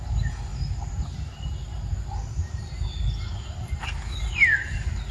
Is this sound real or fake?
real